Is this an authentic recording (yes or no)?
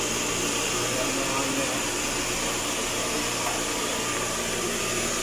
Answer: yes